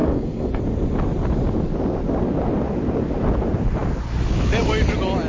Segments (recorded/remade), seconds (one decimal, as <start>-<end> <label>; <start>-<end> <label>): 0.0-0.6 remade; 0.6-5.3 recorded